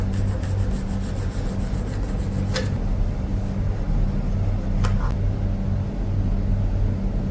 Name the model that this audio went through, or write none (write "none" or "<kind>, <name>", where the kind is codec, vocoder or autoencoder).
none